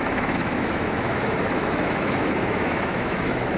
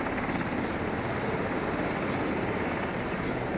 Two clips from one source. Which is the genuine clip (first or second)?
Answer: second